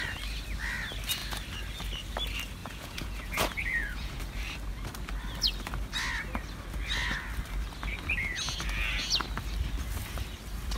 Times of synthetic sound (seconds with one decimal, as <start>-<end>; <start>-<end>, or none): 2.6-4.1